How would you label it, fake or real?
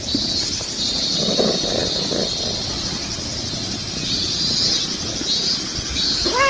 real